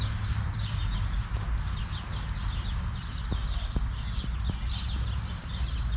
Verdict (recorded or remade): recorded